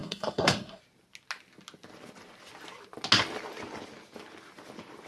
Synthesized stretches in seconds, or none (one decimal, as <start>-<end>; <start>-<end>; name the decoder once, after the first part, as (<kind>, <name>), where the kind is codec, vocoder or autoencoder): 0.0-0.8 (codec, SNAC)

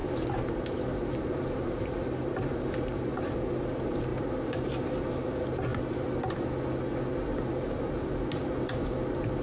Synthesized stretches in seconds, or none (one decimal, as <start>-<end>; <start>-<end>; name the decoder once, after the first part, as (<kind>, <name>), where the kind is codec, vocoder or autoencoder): 0.0-3.3 (vocoder, BigVGAN v2)

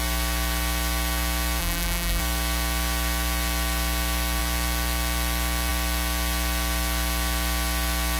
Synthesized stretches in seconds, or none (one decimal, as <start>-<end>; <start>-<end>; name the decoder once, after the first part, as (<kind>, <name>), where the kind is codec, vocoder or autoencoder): 1.6-2.2 (vocoder, BigVGAN v2)

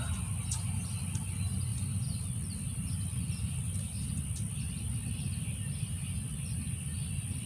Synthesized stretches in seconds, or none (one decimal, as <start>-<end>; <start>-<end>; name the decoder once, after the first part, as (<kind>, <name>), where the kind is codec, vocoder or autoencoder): none

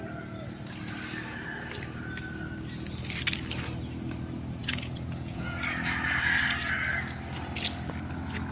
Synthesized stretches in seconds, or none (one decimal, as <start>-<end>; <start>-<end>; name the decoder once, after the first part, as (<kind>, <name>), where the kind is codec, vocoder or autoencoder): 4.6-5.6 (vocoder, Vocos)

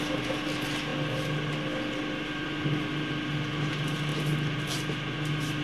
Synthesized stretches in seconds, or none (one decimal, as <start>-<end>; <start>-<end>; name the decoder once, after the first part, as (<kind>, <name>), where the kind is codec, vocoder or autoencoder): none

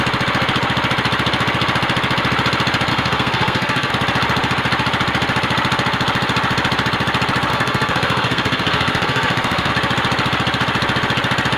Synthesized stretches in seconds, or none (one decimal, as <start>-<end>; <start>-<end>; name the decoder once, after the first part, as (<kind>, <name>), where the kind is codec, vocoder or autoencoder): 2.9-3.9 (codec, SNAC); 7.5-9.7